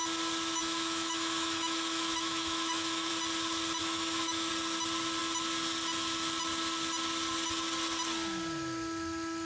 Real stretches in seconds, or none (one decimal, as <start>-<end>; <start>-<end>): 0.0-0.6; 3.1-3.8; 4.5-9.5